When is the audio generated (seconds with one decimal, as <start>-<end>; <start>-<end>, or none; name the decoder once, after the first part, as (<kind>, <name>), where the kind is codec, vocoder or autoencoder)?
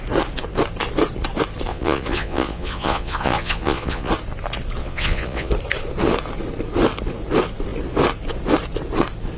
1.7-4.1 (vocoder, Vocos); 4.8-5.5